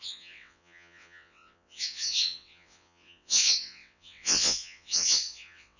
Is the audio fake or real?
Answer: fake